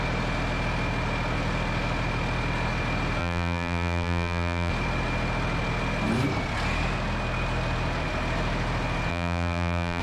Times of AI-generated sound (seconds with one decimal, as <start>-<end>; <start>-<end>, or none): 3.2-4.7; 9.1-10.0